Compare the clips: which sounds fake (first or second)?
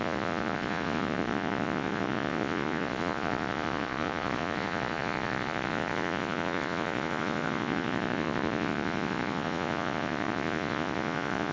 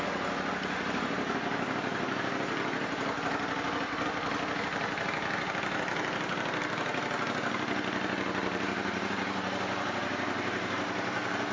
first